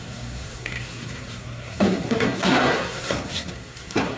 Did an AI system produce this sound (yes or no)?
yes